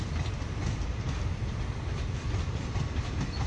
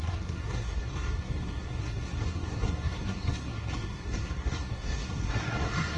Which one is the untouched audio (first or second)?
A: first